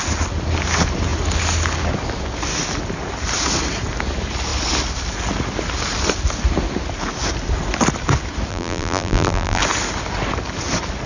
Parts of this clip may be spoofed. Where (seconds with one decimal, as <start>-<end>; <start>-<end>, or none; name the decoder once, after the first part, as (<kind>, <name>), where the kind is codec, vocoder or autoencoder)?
8.5-9.6 (vocoder, BigVGAN v2)

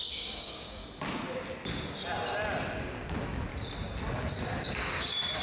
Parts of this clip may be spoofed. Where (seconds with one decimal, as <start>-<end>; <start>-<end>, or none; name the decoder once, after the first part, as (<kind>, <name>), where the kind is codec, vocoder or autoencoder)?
0.0-0.8 (codec, DAC); 2.8-3.5; 4.7-5.4

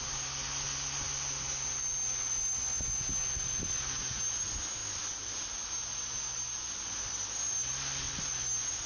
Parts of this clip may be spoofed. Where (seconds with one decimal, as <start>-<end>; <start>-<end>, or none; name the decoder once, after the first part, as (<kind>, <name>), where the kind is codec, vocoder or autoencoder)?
none

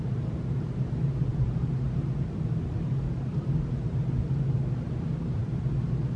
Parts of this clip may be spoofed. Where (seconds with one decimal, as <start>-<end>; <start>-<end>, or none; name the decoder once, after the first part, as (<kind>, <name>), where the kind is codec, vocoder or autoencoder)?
0.0-5.4 (vocoder, BigVGAN v2)

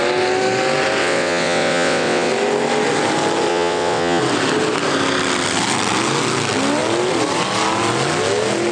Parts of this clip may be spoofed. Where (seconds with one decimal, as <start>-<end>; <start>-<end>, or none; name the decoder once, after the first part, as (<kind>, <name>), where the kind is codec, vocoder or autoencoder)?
1.0-2.3 (vocoder, WaveNeXt); 3.5-4.2

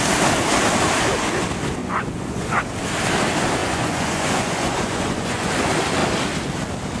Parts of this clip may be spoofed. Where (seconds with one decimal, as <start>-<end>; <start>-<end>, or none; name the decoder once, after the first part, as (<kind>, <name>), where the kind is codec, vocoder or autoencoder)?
1.8-2.6 (vocoder, Vocos); 3.6-5.5

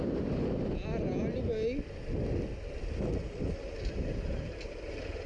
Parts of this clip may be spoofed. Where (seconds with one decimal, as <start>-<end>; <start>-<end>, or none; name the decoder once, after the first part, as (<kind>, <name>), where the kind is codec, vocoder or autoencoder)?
none

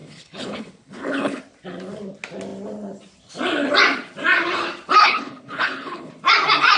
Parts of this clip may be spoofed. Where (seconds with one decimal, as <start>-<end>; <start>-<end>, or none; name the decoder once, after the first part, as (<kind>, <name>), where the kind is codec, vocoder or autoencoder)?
0.0-1.4 (codec, HILCodec); 5.0-6.1